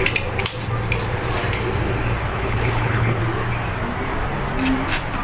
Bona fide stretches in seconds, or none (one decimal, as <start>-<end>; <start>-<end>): 0.0-2.3; 3.2-5.2